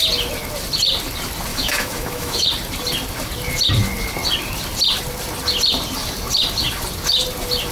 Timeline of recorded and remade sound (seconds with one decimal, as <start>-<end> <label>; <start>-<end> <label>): 0.0-1.5 recorded; 1.5-2.5 remade; 2.5-7.7 recorded